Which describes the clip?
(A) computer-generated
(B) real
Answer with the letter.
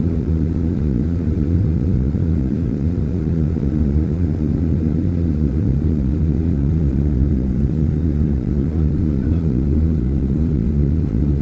A